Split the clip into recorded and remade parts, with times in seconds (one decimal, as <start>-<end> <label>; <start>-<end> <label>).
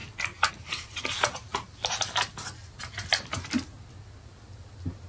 0.0-5.1 recorded